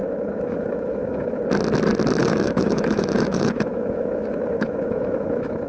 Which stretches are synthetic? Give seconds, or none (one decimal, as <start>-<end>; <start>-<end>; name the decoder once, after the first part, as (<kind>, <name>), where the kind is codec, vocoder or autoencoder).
0.0-1.4 (autoencoder, DAC-VAE); 2.2-5.7